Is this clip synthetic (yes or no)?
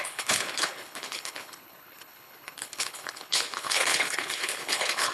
yes